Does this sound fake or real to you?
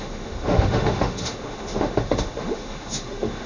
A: fake